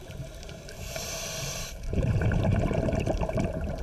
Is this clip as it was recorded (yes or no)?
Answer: no